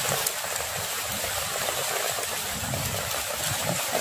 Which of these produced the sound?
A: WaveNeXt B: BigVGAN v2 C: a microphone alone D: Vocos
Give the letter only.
C